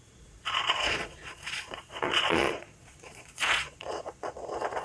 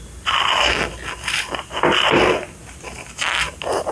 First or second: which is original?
second